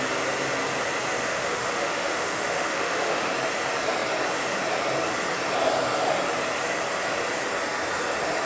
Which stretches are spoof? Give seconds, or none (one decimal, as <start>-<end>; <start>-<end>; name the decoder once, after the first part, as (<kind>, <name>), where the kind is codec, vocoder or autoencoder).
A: 1.3-3.3 (autoencoder, DAC-VAE)